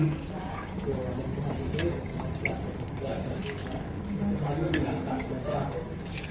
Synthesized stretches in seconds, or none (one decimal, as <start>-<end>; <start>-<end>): 0.0-0.9; 1.5-2.1; 2.8-6.3